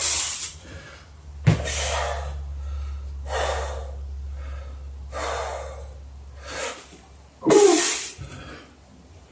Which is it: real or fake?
real